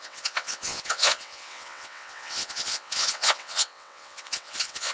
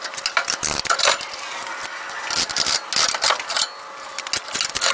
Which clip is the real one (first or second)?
second